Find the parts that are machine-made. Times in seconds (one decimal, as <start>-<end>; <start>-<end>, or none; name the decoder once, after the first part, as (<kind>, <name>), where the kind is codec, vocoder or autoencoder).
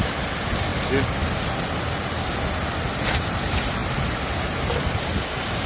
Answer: 0.0-0.7 (vocoder, BigVGAN v2); 3.1-5.7